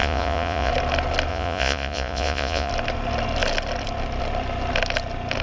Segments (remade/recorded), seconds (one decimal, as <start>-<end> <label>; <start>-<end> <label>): 0.0-0.7 remade; 0.7-1.3 recorded; 1.3-2.7 remade; 2.7-5.4 recorded